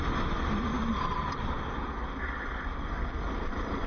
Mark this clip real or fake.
real